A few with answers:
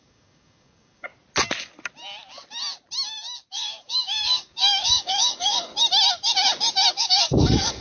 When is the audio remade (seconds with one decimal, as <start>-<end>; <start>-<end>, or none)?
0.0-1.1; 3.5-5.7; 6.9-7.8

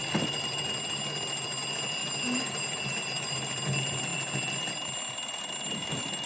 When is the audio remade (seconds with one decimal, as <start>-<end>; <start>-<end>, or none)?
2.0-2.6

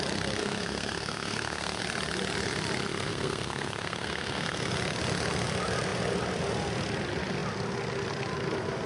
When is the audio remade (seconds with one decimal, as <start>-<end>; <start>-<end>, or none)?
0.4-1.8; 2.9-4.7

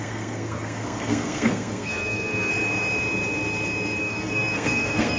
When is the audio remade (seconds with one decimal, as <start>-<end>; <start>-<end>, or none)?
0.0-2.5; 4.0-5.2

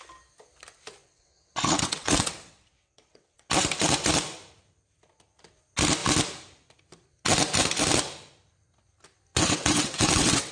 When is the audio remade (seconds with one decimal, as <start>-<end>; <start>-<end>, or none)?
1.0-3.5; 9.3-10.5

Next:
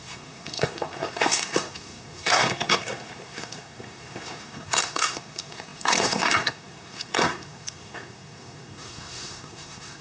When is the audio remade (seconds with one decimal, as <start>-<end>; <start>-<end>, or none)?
0.0-10.0

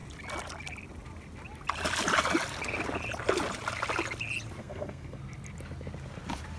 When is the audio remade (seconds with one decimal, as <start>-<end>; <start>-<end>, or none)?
4.6-5.2